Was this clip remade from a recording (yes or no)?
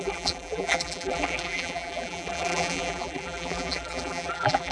yes